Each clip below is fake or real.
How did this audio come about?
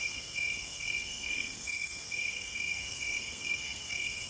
fake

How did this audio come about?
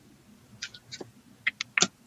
real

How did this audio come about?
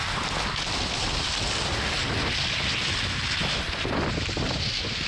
real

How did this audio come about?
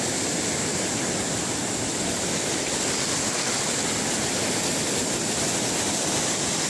real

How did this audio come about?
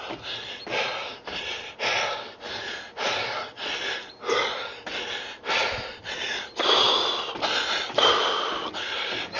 real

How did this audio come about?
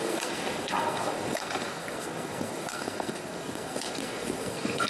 fake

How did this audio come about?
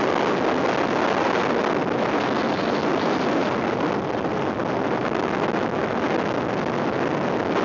real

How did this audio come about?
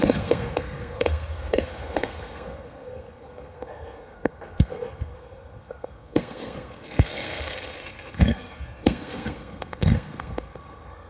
fake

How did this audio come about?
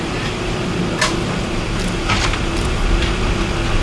real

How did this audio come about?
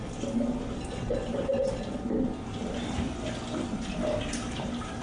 real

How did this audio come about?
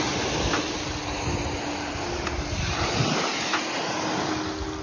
real